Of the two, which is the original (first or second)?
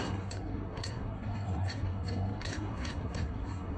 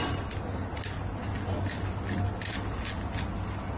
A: second